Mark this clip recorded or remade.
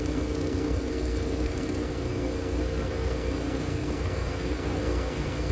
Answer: remade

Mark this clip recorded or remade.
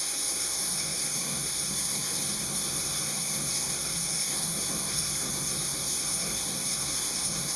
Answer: remade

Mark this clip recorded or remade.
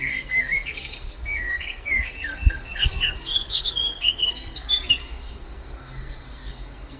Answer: remade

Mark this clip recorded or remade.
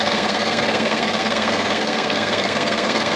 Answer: remade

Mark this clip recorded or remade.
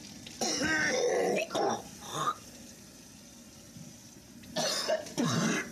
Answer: recorded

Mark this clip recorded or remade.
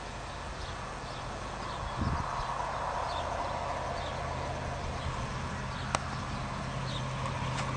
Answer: recorded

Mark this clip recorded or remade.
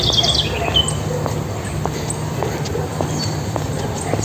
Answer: recorded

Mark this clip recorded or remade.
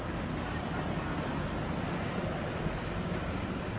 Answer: recorded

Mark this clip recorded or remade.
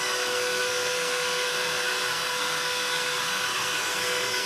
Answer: remade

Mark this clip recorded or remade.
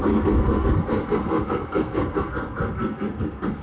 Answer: remade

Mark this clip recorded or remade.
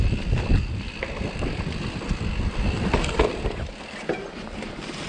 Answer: recorded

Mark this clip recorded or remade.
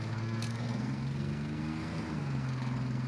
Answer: remade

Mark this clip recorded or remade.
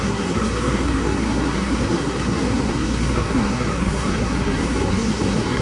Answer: remade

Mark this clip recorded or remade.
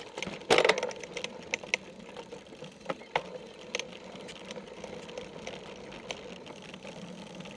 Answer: recorded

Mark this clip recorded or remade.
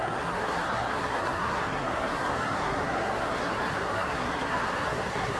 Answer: remade